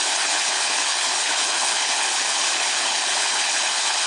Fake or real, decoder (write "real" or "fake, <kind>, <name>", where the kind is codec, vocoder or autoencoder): fake, codec, HILCodec